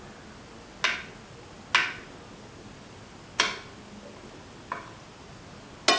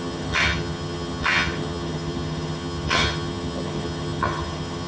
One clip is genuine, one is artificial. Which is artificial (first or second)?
second